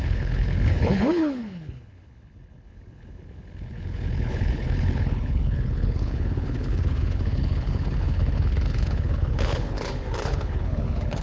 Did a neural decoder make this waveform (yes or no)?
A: yes